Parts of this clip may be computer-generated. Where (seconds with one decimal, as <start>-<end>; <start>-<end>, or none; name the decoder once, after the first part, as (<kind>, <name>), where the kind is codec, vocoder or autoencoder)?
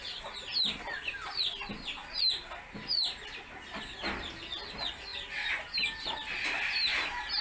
none